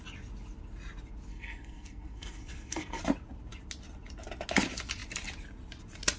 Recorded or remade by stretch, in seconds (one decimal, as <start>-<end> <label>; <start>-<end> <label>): 0.0-1.3 recorded; 1.3-3.0 remade; 3.0-6.2 recorded